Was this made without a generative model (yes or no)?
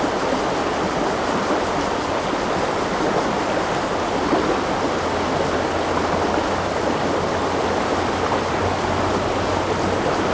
yes